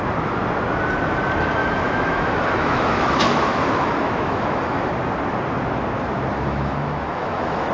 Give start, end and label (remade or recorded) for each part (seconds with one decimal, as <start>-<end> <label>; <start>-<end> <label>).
0.0-1.6 recorded; 1.6-4.9 remade; 4.9-6.3 recorded; 6.3-7.7 remade